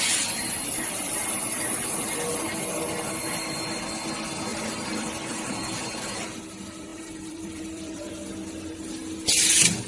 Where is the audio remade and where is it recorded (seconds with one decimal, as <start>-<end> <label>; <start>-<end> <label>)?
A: 0.0-4.5 recorded; 4.5-5.5 remade; 5.5-6.9 recorded; 6.9-8.1 remade; 8.1-9.9 recorded